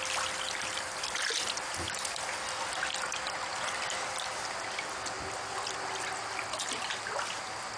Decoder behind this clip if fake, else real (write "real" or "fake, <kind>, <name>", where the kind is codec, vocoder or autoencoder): real